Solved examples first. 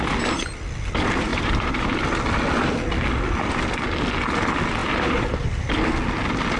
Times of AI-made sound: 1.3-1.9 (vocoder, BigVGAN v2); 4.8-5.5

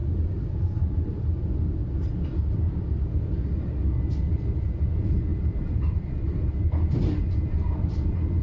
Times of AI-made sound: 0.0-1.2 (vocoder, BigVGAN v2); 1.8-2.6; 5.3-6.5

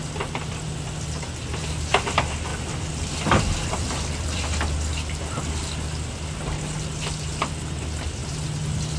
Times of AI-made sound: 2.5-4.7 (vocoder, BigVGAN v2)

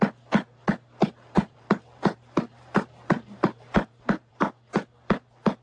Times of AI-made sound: 1.0-4.4 (vocoder, BigVGAN v2)

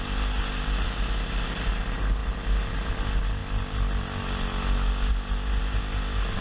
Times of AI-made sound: none